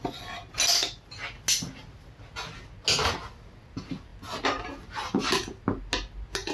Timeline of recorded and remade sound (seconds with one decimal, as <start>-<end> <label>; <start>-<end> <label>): 0.0-6.5 recorded